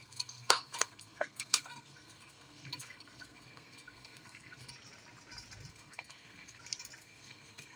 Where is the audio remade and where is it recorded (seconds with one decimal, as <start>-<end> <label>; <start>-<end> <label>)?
0.0-4.7 remade; 4.7-5.7 recorded; 5.7-6.6 remade; 6.6-7.0 recorded; 7.0-7.8 remade

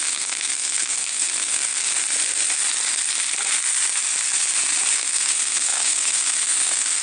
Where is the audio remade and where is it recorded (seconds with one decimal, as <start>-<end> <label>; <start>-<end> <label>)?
0.0-1.9 remade; 1.9-4.9 recorded; 4.9-7.0 remade

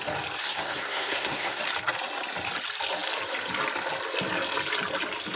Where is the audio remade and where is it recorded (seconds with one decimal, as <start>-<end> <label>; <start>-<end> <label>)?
0.0-0.4 recorded; 0.4-1.6 remade; 1.6-5.4 recorded

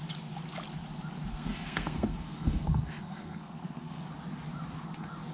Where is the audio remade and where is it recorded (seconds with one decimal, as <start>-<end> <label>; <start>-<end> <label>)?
0.0-1.3 recorded; 1.3-4.0 remade; 4.0-5.3 recorded

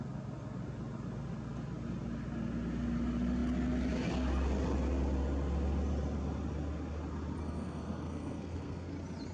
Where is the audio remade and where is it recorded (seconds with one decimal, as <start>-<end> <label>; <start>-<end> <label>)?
0.0-7.4 recorded; 7.4-8.9 remade; 8.9-9.3 recorded

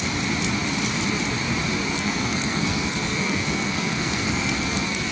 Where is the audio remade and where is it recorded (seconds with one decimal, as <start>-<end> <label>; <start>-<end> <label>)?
0.0-1.9 recorded; 1.9-5.1 remade